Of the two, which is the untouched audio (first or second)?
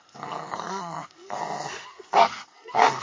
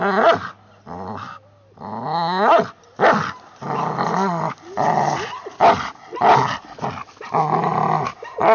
second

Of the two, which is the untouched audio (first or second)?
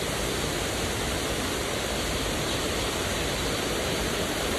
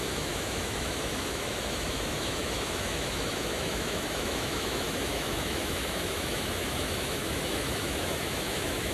first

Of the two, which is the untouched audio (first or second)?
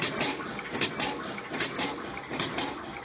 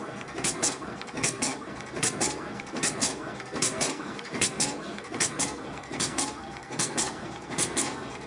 first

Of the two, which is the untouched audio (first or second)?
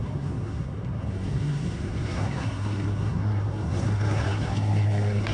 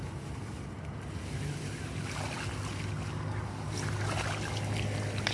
second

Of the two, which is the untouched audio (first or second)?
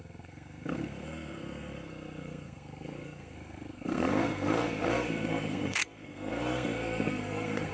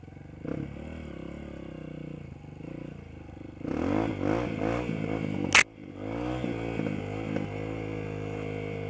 second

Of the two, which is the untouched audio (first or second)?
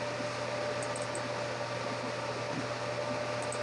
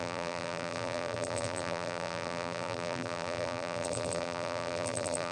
first